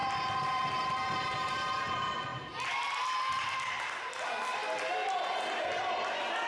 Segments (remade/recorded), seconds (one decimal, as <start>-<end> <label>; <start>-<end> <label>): 0.0-6.5 recorded